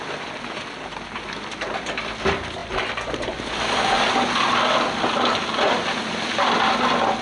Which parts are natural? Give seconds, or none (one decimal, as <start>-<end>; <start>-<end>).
0.0-7.2